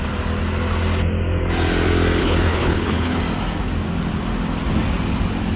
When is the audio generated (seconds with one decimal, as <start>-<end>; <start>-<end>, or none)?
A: 2.2-3.2